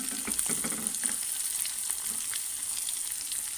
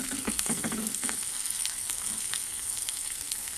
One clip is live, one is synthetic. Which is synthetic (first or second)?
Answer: second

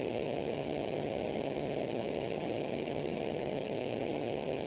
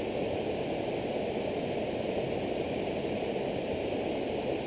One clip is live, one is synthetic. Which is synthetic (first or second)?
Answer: first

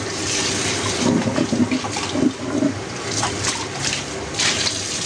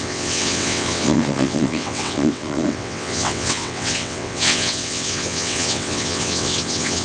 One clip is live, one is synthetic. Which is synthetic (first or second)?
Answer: second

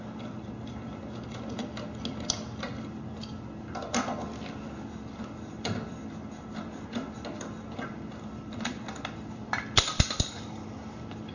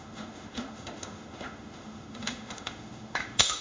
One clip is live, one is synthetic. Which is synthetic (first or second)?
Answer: second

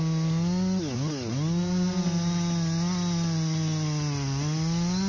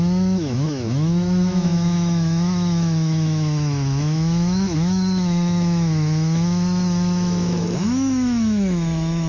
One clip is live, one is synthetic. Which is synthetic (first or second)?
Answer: second